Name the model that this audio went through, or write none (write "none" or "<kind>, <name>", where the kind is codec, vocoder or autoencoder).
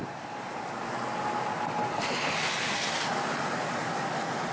none